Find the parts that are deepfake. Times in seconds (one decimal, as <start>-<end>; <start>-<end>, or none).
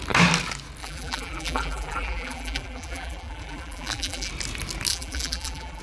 0.8-4.3; 4.9-5.8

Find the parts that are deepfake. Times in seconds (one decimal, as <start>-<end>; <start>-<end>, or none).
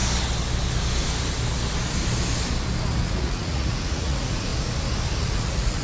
3.0-4.5; 5.2-5.8